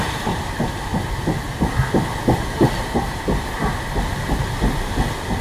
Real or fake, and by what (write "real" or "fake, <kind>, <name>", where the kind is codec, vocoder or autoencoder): real